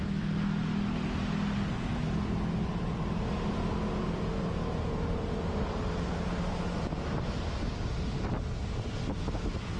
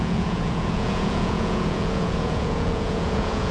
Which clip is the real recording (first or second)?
first